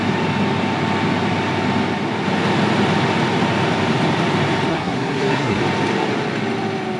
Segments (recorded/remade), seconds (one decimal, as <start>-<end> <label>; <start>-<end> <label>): 0.0-4.7 recorded; 4.7-5.6 remade; 5.6-7.0 recorded